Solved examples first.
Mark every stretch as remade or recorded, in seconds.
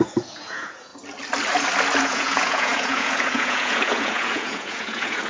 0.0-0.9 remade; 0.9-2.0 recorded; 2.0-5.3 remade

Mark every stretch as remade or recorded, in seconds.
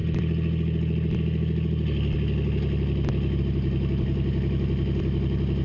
0.0-5.6 recorded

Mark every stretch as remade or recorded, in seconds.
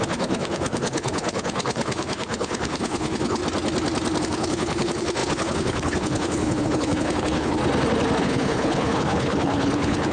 0.0-3.4 remade; 3.4-4.2 recorded; 4.2-7.6 remade; 7.6-8.2 recorded; 8.2-10.1 remade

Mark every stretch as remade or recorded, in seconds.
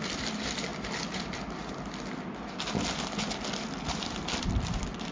0.0-0.7 remade; 0.7-3.8 recorded; 3.8-5.1 remade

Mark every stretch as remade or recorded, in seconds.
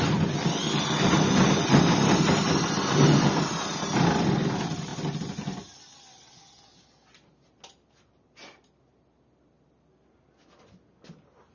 0.0-11.5 recorded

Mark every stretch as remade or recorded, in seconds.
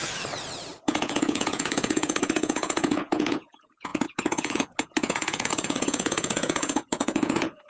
0.0-0.8 recorded; 0.8-7.7 remade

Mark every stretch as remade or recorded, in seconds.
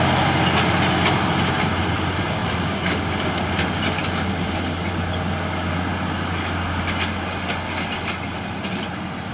0.0-9.3 recorded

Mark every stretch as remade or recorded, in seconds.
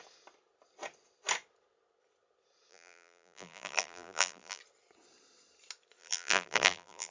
0.0-2.7 recorded; 2.7-4.6 remade; 4.6-6.0 recorded; 6.0-7.1 remade